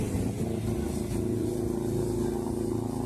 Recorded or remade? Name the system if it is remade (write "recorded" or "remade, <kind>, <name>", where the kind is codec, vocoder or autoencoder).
recorded